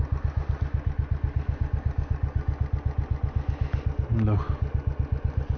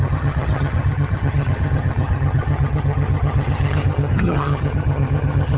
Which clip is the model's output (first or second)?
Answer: second